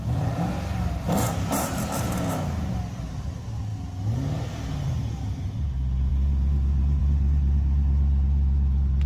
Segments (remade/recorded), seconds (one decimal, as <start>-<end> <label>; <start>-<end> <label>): 0.0-9.1 recorded